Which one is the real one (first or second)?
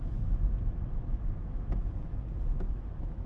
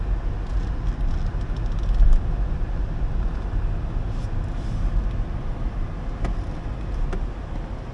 second